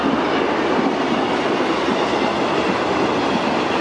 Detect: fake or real real